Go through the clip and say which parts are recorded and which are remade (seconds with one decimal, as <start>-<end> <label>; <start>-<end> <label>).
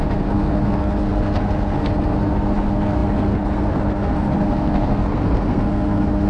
0.0-6.3 remade